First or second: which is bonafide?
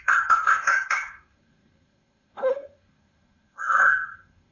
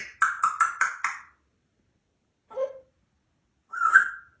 second